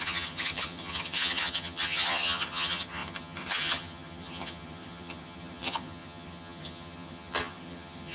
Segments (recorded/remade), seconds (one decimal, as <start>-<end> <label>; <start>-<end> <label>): 0.0-8.1 remade